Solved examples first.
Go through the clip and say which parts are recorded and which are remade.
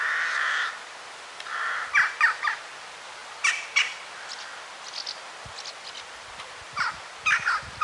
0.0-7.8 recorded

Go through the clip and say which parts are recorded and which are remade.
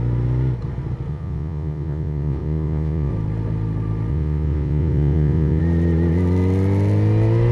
0.0-1.1 recorded; 1.1-3.1 remade; 3.1-4.1 recorded; 4.1-5.6 remade; 5.6-7.5 recorded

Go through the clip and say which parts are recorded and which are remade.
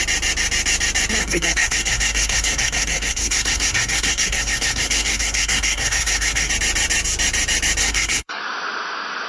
0.0-1.2 recorded; 1.2-6.5 remade; 6.5-7.8 recorded; 7.8-8.4 remade; 8.4-9.3 recorded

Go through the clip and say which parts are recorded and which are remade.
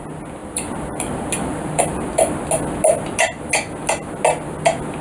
0.0-0.4 recorded; 0.4-1.1 remade; 1.1-1.5 recorded; 1.5-2.4 remade; 2.4-5.0 recorded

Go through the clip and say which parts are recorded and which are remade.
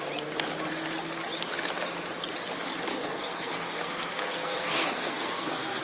0.0-2.9 recorded; 2.9-5.8 remade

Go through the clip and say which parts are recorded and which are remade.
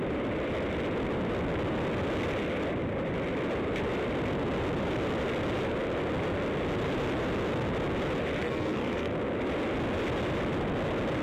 0.0-8.4 recorded; 8.4-9.1 remade; 9.1-11.2 recorded